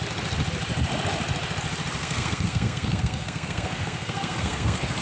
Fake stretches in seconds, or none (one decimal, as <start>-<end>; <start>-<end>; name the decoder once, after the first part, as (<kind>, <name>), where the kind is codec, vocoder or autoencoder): 2.0-5.0 (codec, SNAC)